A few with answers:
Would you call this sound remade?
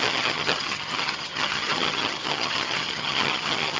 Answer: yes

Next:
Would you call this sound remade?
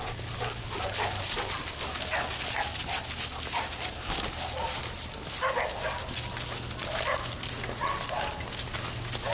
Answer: no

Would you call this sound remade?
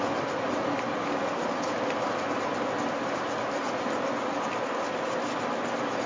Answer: no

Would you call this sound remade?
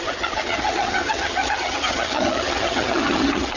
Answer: yes